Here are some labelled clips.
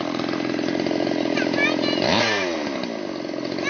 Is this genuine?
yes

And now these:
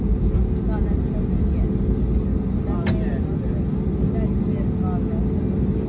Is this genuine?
yes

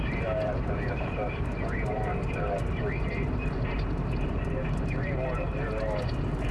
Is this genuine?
no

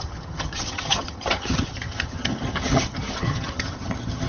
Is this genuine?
no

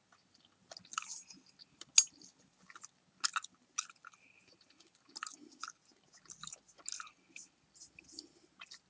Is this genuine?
yes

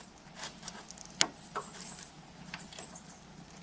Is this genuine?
yes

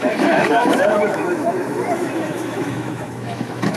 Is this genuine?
no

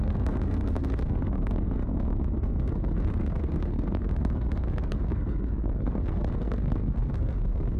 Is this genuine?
no